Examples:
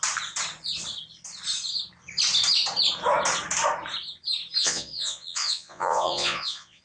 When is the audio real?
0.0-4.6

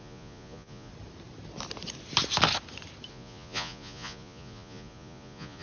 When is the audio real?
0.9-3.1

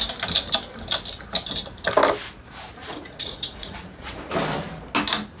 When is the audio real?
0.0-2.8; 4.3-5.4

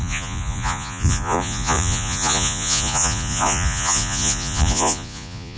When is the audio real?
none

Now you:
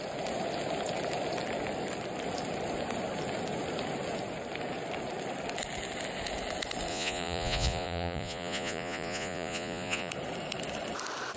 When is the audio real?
0.0-6.9; 10.1-11.4

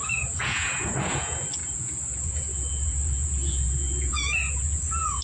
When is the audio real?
none